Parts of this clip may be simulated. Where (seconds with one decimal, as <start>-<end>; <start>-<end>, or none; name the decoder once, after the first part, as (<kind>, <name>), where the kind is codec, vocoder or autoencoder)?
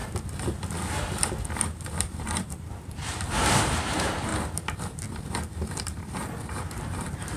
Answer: 1.6-4.3 (vocoder, BigVGAN v2); 6.5-7.4